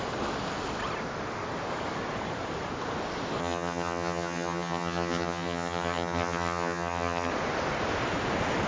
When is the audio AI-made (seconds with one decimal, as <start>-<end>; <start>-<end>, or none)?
3.4-7.3